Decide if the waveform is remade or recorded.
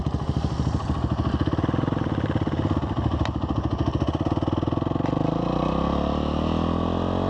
recorded